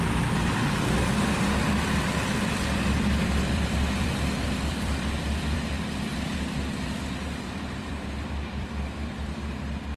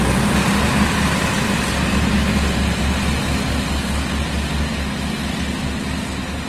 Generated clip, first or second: first